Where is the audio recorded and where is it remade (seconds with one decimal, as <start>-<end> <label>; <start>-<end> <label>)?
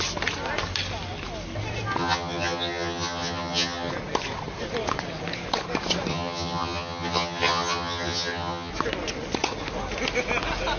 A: 0.0-2.0 recorded; 2.0-3.9 remade; 3.9-6.1 recorded; 6.1-8.7 remade; 8.7-10.8 recorded